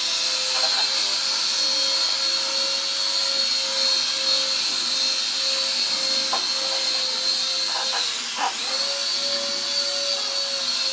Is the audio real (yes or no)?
yes